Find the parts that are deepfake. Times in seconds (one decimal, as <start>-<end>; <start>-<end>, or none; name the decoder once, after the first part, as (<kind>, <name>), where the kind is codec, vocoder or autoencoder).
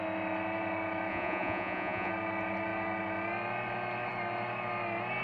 1.1-2.1 (vocoder, Vocos)